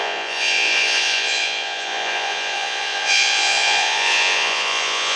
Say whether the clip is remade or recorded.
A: remade